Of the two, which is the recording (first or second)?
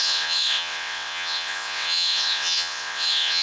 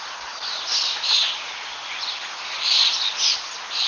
second